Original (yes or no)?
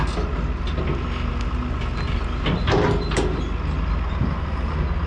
yes